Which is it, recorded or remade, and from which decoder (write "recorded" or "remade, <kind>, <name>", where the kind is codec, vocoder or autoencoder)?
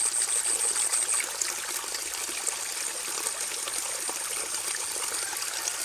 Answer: recorded